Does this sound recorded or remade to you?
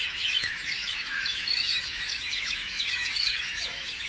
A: remade